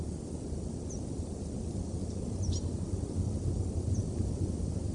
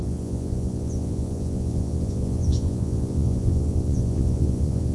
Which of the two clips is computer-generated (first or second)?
second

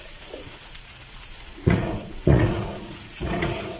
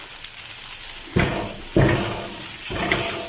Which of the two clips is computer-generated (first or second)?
first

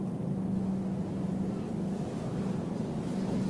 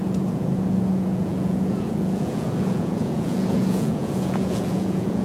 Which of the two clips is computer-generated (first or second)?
second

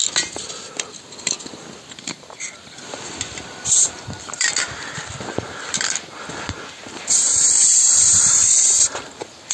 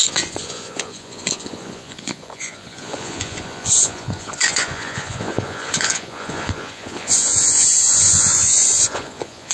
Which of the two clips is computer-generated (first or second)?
second